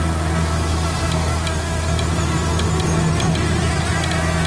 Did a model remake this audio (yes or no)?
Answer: no